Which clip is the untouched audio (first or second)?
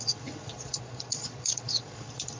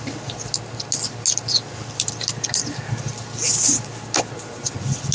second